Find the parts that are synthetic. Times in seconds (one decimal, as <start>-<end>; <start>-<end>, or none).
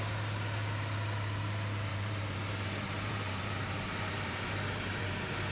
1.9-5.0